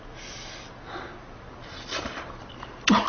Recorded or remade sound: recorded